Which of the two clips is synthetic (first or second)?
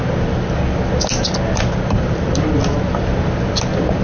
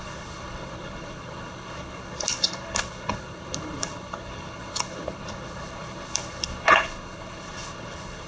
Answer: second